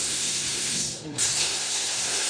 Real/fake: fake